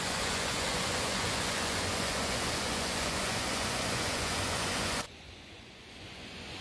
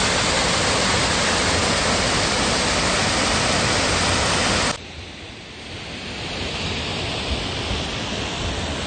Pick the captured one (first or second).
second